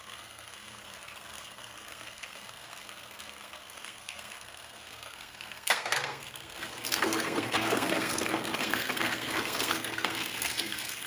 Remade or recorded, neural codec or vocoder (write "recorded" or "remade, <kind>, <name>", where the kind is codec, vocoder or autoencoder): remade, codec, SNAC